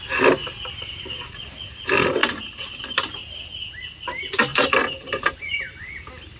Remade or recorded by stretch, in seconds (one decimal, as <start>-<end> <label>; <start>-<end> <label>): 0.0-0.4 recorded; 0.4-1.0 remade; 1.0-2.2 recorded; 2.2-3.1 remade; 3.1-4.5 recorded; 4.5-5.9 remade; 5.9-6.4 recorded